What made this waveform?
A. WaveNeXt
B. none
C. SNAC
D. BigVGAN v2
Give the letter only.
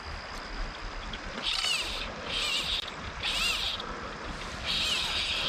B